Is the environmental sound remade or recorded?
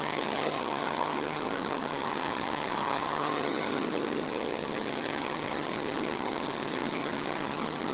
remade